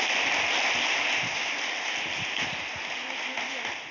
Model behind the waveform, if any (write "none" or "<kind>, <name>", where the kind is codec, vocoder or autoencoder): none